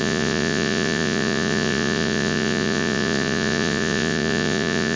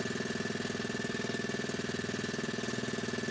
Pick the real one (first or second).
second